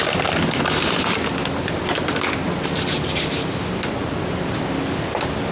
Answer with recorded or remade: recorded